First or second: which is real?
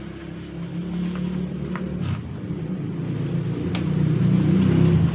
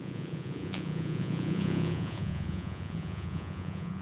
first